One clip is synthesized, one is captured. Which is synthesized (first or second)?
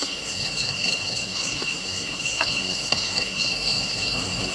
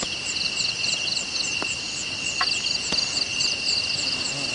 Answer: first